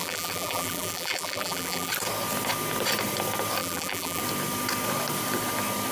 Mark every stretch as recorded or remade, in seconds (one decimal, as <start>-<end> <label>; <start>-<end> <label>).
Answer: 0.0-1.9 remade; 1.9-3.6 recorded; 3.6-4.2 remade; 4.2-5.9 recorded